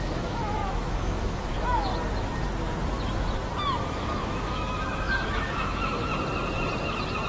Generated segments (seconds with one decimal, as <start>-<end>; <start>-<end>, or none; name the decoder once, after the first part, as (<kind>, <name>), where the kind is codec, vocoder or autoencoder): 0.0-1.9 (autoencoder, DAC-VAE); 3.8-6.1